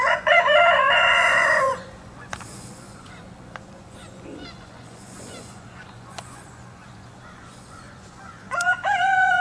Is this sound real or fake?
fake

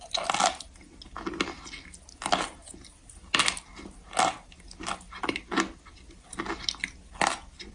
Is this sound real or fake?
real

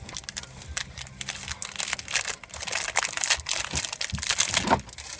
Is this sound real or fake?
real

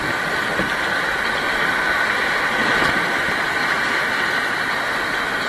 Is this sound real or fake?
real